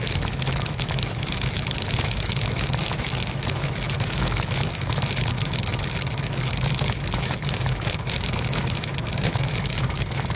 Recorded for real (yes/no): no